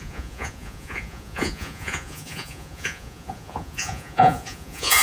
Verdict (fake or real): fake